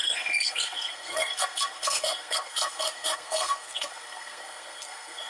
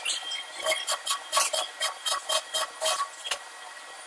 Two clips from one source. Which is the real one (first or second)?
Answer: second